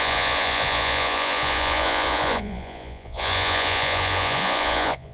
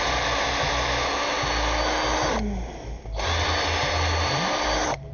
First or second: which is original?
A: second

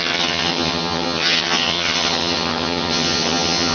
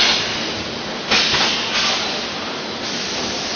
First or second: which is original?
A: second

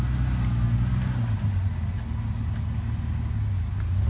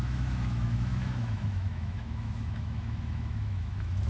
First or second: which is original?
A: first